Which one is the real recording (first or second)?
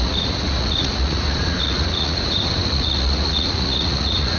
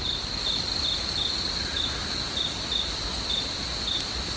second